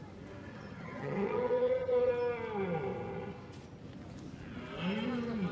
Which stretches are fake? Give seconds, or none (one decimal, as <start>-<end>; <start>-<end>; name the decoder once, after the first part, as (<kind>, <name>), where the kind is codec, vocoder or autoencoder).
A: 0.5-2.1 (vocoder, HiFi-GAN)